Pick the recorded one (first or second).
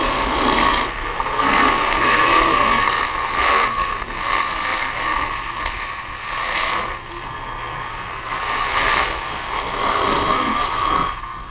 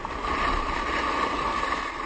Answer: second